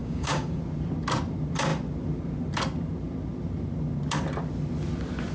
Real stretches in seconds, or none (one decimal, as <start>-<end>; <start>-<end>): 0.6-5.3